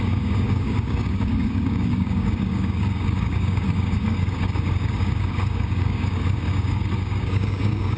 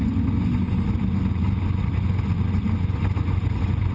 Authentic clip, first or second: second